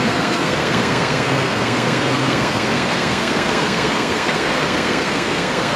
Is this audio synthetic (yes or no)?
yes